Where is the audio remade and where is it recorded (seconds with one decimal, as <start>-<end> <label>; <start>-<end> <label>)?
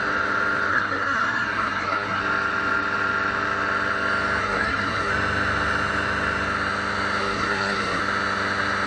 0.0-0.7 recorded; 0.7-2.2 remade; 2.2-4.4 recorded; 4.4-5.1 remade; 5.1-7.2 recorded; 7.2-8.0 remade; 8.0-8.9 recorded